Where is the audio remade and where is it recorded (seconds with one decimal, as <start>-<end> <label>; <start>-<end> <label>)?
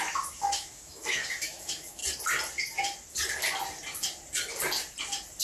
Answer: 0.0-2.0 remade; 2.0-5.4 recorded